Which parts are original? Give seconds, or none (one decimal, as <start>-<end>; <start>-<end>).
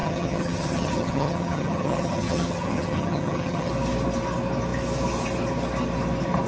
3.7-6.5